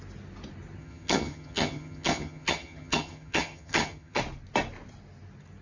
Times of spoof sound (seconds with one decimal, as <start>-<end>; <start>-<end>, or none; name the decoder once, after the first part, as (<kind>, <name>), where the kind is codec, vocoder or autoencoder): 0.8-4.2 (vocoder, HiFi-GAN)